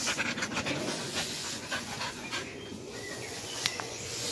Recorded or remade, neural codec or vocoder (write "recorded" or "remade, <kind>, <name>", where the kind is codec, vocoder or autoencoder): remade, vocoder, Vocos